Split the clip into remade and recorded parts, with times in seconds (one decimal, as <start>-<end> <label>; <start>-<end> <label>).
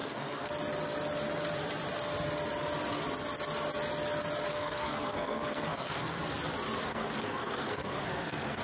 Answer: 0.0-0.5 remade; 0.5-4.5 recorded; 4.5-6.2 remade; 6.2-6.9 recorded; 6.9-8.6 remade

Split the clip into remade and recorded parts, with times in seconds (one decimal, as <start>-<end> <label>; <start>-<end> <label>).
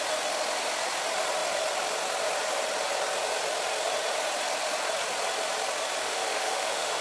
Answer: 0.0-6.0 recorded; 6.0-7.0 remade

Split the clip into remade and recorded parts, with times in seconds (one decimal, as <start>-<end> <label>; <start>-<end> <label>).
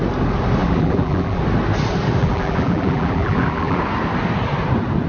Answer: 0.0-0.6 recorded; 0.6-1.4 remade; 1.4-2.2 recorded; 2.2-3.8 remade; 3.8-5.1 recorded